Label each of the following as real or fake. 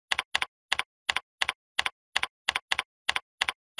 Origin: real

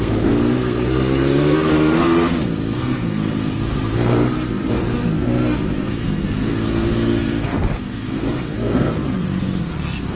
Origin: fake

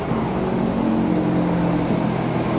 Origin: real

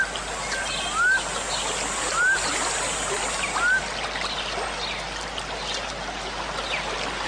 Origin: real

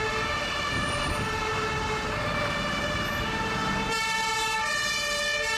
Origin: real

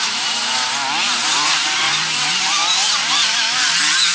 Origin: real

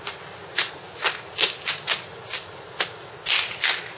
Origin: real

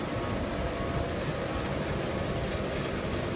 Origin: real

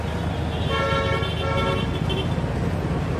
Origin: real